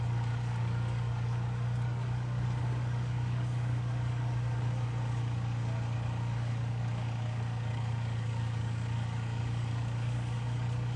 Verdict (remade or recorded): remade